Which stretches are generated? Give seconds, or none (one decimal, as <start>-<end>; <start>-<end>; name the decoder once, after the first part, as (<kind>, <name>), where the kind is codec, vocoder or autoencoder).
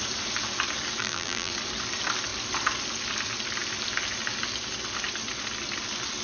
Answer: 1.0-1.5 (vocoder, BigVGAN v2)